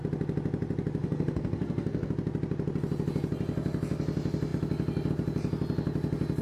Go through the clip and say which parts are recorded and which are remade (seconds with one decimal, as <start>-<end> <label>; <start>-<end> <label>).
0.0-1.0 recorded; 1.0-2.1 remade; 2.1-6.4 recorded